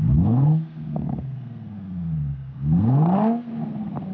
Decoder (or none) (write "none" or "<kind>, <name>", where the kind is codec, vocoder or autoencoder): codec, SNAC